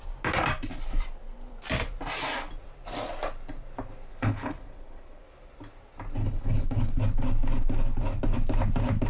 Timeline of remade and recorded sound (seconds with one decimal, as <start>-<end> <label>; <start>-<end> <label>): 0.0-4.1 recorded; 4.1-5.2 remade; 5.2-6.2 recorded; 6.2-7.0 remade; 7.0-9.1 recorded